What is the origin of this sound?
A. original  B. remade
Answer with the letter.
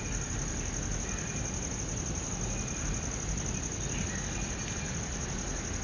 A